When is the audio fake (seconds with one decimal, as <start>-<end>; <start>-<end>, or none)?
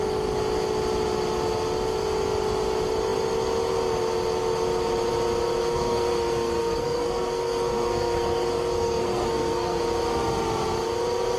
5.6-9.8